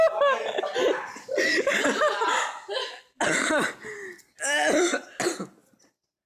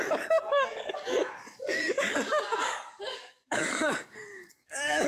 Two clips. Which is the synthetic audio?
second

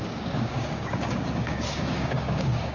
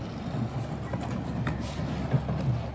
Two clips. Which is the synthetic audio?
first